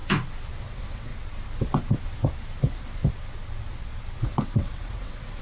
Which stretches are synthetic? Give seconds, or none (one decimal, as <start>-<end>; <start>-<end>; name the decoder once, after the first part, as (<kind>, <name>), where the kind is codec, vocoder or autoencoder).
0.6-1.1 (vocoder, WaveNeXt); 2.6-3.0; 4.2-5.4